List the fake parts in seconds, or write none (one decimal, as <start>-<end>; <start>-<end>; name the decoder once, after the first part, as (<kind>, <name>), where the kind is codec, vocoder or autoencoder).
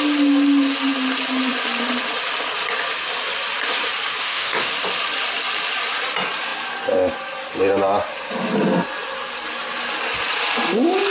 4.2-4.7 (autoencoder, DAC-VAE)